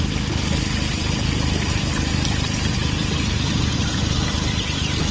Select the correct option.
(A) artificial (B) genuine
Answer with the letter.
B